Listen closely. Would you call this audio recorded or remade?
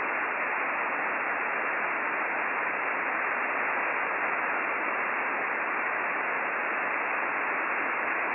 recorded